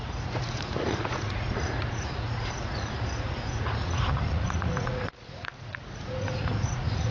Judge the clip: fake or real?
fake